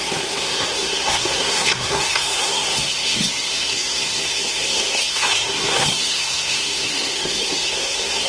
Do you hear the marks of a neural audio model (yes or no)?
yes